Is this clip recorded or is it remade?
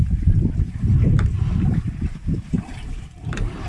remade